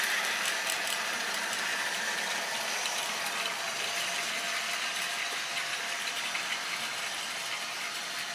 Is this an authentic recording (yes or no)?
no